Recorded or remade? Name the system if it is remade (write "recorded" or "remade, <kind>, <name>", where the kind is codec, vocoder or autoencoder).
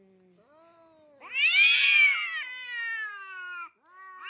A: recorded